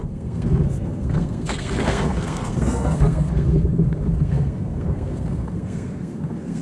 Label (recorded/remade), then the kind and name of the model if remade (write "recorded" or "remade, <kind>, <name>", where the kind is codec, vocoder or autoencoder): remade, codec, SNAC